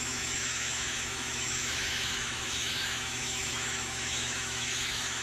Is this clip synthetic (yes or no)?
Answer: yes